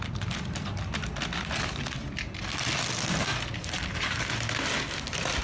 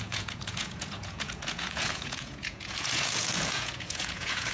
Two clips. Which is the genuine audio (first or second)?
first